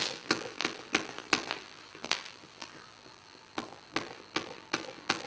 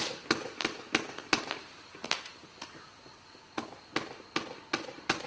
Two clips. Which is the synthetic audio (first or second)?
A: first